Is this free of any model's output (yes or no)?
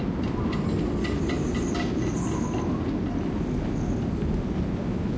yes